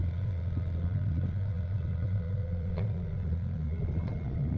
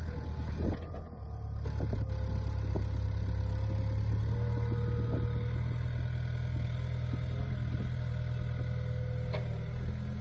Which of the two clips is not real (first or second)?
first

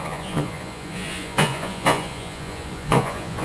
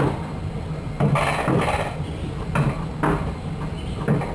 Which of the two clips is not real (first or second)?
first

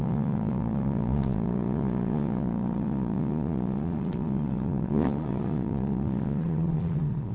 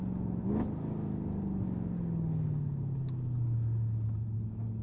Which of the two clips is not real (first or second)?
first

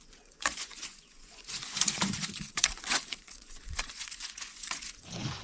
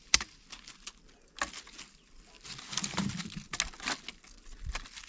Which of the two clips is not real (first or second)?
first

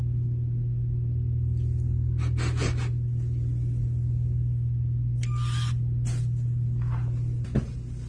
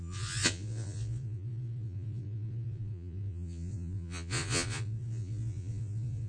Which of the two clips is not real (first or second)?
second